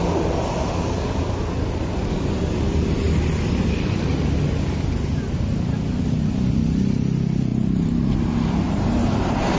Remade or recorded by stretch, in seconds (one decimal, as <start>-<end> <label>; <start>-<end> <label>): 0.0-7.5 recorded; 7.5-9.6 remade